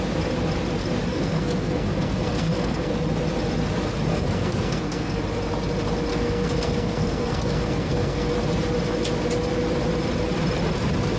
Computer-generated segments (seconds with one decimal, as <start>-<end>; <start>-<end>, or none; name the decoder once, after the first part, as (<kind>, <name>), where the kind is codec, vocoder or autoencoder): 1.1-2.9 (codec, SNAC); 4.1-5.2; 6.1-8.3

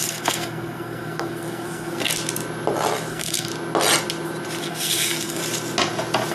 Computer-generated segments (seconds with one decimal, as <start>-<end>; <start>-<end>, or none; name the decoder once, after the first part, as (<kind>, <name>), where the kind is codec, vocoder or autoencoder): 0.0-2.1 (codec, SNAC); 3.1-3.5; 4.6-5.4

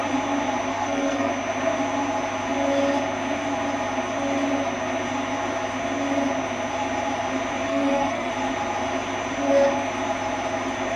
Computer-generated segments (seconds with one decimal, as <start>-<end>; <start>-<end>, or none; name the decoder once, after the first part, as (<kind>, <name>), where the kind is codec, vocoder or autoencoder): 0.7-1.3 (codec, SNAC); 7.7-8.3

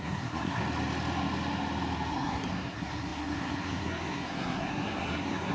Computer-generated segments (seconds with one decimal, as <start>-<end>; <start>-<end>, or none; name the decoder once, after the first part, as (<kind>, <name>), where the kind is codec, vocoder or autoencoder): 0.0-0.6 (codec, SNAC); 2.1-5.5

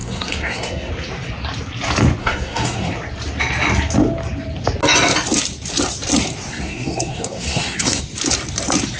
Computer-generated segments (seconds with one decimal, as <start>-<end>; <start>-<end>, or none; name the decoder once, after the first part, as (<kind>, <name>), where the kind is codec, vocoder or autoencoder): 0.0-0.9 (codec, SNAC); 2.2-2.9; 6.5-8.0

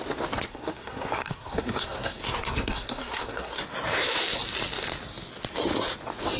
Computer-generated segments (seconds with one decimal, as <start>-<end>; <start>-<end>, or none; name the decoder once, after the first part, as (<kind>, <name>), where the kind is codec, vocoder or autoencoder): 0.5-3.6 (codec, SNAC)

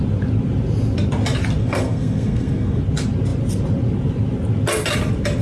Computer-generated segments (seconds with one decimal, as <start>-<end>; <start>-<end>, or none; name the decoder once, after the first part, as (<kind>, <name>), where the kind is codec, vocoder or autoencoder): 1.6-2.8 (codec, SNAC)

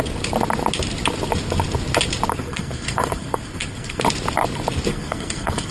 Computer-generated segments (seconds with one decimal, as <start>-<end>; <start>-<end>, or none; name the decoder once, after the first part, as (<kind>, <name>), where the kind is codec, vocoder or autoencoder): 2.3-4.0 (codec, SNAC); 4.9-5.7